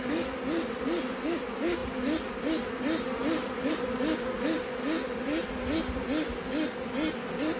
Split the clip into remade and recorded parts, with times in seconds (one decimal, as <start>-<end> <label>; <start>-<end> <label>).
0.0-7.6 recorded